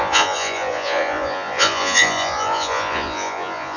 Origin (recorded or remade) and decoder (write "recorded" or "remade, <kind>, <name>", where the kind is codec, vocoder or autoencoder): remade, vocoder, Vocos